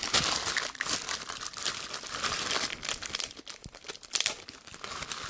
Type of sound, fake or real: fake